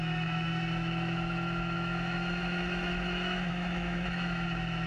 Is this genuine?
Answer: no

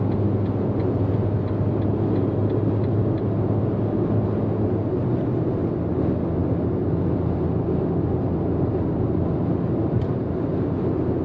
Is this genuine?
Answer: yes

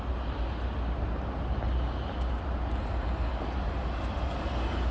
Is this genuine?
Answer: yes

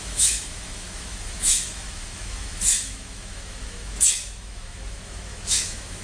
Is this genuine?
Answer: no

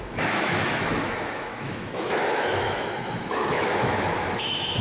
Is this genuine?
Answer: no